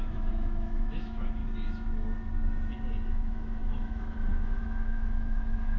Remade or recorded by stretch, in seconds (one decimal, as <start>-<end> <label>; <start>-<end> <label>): 0.0-1.4 remade; 1.4-3.1 recorded; 3.1-5.8 remade